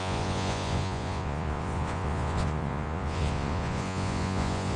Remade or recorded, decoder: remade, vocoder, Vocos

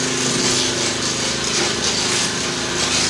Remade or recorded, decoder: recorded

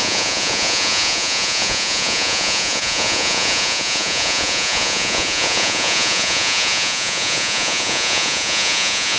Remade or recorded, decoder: remade, vocoder, Vocos